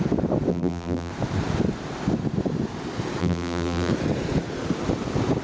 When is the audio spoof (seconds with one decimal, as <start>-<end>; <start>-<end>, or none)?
0.5-1.1; 3.2-3.9